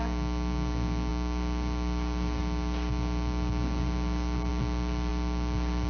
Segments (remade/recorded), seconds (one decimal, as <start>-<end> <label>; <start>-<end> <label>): 0.0-5.9 recorded